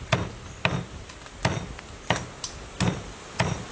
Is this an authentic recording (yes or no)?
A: yes